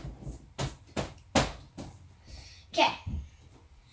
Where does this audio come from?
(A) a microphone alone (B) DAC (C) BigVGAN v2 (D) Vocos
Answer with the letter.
A